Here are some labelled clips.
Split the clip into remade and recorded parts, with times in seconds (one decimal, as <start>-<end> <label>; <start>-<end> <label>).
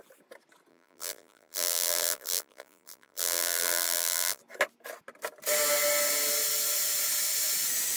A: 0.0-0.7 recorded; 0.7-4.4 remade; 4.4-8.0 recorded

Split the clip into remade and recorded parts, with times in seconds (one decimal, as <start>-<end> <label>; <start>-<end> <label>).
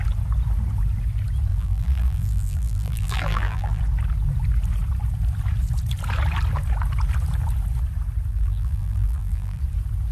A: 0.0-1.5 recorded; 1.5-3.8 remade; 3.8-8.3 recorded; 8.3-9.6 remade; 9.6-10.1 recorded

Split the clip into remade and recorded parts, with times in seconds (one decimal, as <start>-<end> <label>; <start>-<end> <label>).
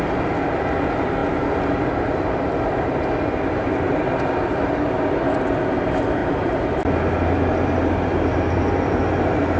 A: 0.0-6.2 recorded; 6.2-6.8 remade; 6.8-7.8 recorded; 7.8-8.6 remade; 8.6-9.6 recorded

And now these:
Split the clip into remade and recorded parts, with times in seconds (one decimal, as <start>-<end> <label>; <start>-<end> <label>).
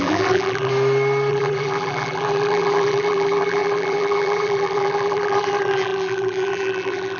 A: 0.0-0.7 remade; 0.7-1.3 recorded; 1.3-7.2 remade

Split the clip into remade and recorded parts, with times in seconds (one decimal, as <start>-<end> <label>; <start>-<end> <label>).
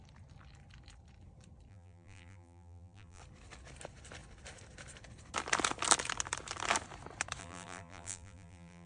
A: 0.0-1.7 recorded; 1.7-3.2 remade; 3.2-7.4 recorded; 7.4-8.9 remade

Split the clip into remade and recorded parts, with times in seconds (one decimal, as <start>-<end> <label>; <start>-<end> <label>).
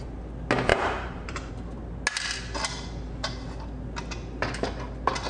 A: 0.0-0.7 recorded; 0.7-1.5 remade; 1.5-5.3 recorded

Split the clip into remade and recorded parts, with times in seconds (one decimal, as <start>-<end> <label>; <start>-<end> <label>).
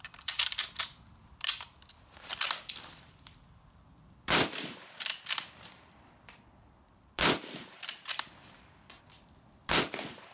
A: 0.0-0.4 remade; 0.4-2.7 recorded; 2.7-10.3 remade